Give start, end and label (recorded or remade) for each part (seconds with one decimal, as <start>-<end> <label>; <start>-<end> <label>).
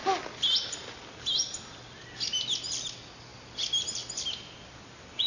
0.0-5.3 recorded